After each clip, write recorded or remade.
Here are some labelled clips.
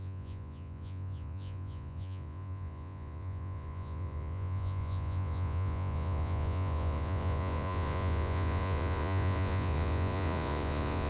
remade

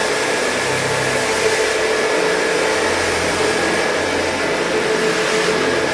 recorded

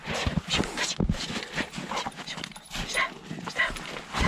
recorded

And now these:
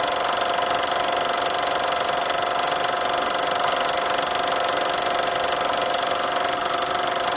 recorded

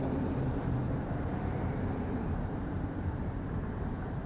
remade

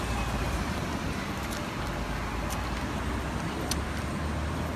recorded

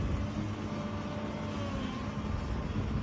recorded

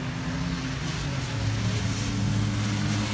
recorded